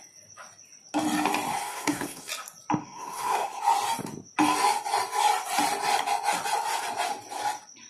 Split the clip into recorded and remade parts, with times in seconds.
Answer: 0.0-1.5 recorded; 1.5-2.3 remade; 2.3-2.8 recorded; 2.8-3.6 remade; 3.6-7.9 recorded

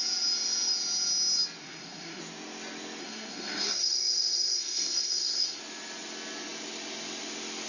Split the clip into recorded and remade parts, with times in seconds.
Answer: 0.0-1.6 recorded; 1.6-2.2 remade; 2.2-3.0 recorded; 3.0-5.6 remade; 5.6-7.7 recorded

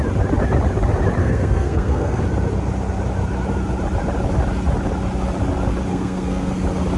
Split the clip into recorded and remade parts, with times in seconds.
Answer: 0.0-1.2 recorded; 1.2-2.2 remade; 2.2-5.9 recorded; 5.9-6.5 remade; 6.5-7.0 recorded

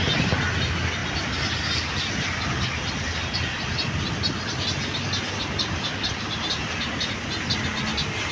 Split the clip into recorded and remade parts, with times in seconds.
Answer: 0.0-8.3 recorded

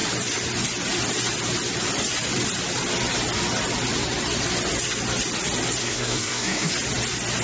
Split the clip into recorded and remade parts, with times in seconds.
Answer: 0.0-5.8 recorded; 5.8-6.7 remade; 6.7-7.4 recorded